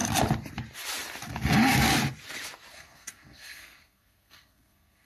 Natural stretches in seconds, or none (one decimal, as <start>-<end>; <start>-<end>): 0.0-2.7